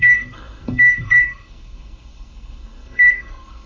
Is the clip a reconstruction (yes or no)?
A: yes